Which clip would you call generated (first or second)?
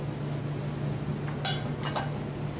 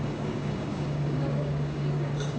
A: second